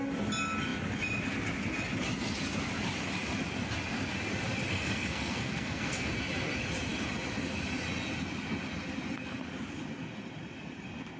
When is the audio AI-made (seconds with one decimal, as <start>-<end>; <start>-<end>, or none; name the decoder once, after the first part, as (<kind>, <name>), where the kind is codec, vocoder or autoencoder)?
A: 4.7-6.1 (codec, SNAC)